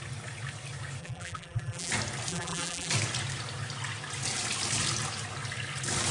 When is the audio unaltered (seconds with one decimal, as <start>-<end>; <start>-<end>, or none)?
0.0-1.0; 1.9-2.3; 2.9-6.1